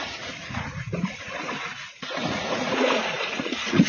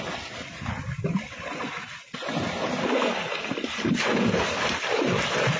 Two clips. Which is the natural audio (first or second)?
second